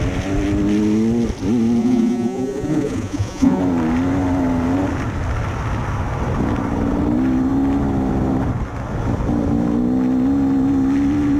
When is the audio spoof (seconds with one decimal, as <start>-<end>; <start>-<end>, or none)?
1.8-3.6